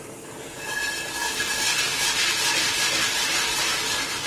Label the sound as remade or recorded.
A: recorded